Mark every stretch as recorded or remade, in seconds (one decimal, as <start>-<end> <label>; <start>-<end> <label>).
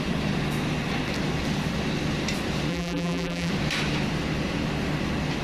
0.0-2.7 recorded; 2.7-3.5 remade; 3.5-5.4 recorded